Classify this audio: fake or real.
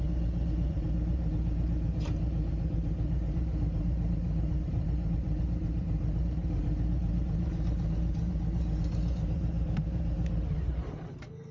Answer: fake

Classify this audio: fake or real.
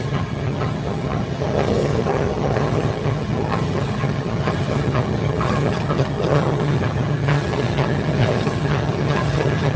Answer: fake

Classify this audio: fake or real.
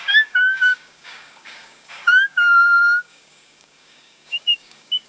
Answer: fake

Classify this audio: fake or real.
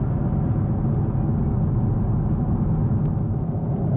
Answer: real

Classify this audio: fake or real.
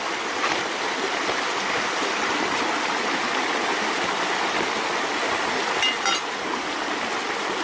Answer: real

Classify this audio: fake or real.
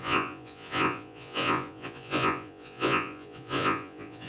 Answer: fake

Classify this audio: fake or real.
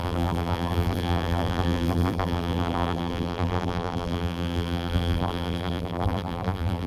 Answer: fake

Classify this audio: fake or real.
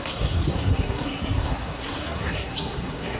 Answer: fake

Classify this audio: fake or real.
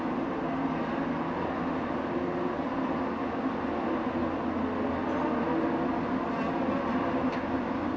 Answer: real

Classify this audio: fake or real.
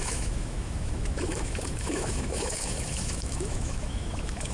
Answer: fake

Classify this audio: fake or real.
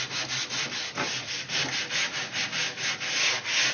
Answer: real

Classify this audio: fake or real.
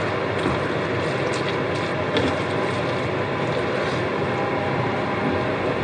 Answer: real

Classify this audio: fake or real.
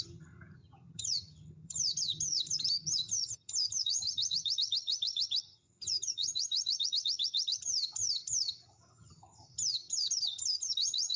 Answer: fake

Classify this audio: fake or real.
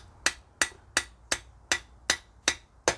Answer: real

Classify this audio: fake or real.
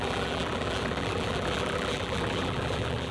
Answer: fake